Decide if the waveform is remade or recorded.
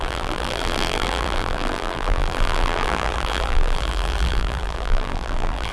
remade